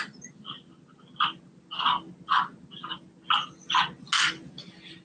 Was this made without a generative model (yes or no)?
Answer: yes